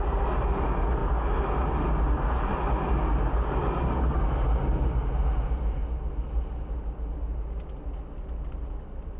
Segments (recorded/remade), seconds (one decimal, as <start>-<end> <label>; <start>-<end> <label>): 0.0-9.2 recorded